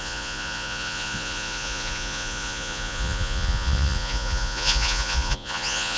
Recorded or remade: remade